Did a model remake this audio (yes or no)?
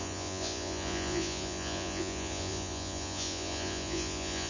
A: yes